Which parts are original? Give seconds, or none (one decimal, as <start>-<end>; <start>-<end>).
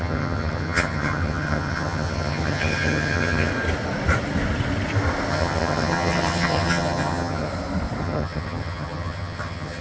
3.5-5.3; 7.5-8.0